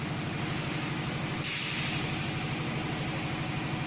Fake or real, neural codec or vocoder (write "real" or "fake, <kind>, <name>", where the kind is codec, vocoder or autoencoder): real